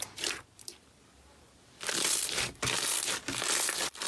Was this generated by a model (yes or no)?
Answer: no